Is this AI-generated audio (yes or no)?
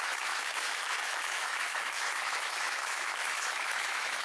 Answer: yes